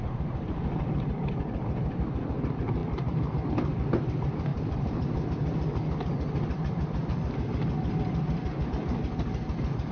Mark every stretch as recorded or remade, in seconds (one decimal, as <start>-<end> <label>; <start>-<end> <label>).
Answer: 0.0-9.9 recorded